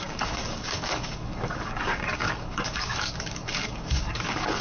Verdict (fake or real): fake